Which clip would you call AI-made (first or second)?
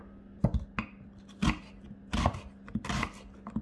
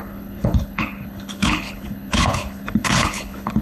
second